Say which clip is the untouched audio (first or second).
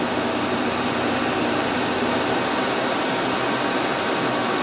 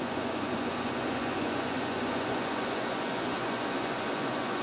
first